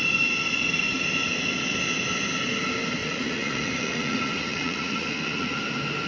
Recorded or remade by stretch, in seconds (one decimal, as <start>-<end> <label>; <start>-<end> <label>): 0.0-3.0 recorded; 3.0-5.6 remade; 5.6-6.1 recorded